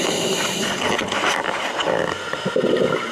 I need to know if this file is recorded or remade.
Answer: recorded